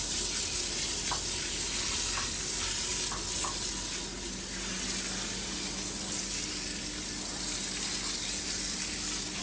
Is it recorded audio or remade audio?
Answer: recorded